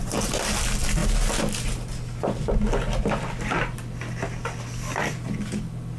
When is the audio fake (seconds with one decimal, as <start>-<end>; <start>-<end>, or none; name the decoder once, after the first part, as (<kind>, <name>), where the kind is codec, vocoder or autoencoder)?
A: none